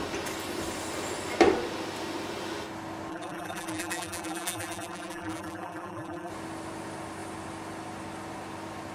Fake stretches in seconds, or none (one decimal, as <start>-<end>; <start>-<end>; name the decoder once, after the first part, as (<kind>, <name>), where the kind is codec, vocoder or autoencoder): 3.1-6.3 (vocoder, BigVGAN v2)